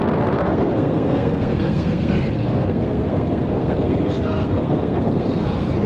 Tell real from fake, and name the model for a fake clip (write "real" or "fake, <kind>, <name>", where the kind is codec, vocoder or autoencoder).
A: fake, codec, SNAC